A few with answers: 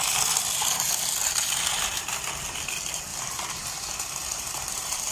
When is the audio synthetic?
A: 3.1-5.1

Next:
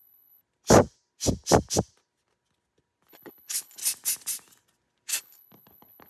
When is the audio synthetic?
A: 0.0-0.4; 3.1-3.8; 5.2-6.1

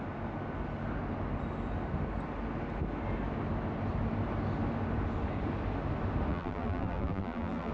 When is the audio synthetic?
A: 6.3-7.7

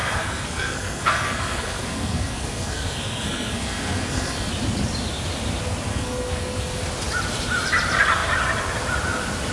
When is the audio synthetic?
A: 0.0-4.5; 5.9-6.8

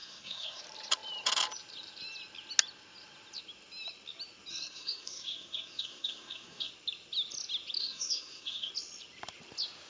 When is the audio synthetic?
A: 0.0-0.6; 4.5-6.7; 7.8-8.7